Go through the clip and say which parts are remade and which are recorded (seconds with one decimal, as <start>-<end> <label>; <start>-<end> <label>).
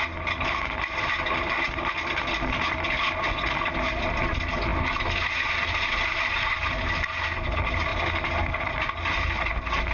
0.0-9.9 recorded